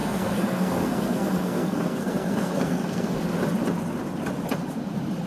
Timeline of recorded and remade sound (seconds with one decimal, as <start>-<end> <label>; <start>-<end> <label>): 0.0-3.2 remade; 3.2-5.3 recorded